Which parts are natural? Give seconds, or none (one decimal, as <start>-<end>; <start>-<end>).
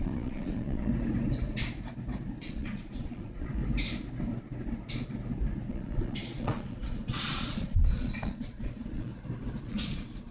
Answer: 0.9-2.4; 3.6-5.7; 9.1-9.6